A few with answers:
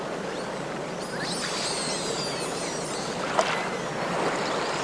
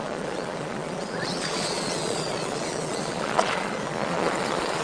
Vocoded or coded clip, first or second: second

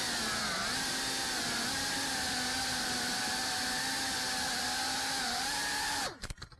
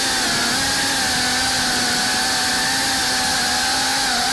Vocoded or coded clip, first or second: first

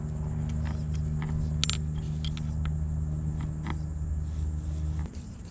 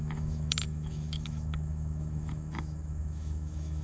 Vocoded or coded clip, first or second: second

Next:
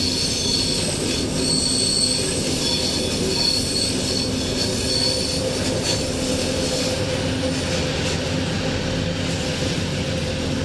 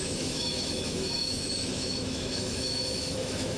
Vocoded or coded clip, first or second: second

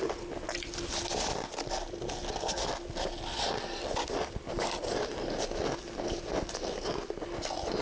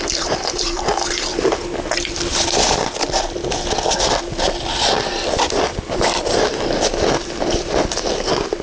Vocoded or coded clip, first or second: second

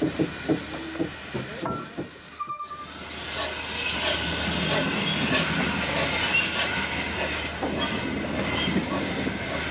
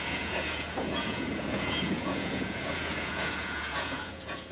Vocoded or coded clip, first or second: second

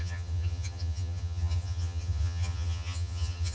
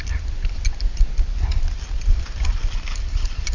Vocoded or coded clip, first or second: first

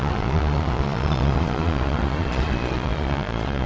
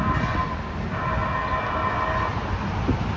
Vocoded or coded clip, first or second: first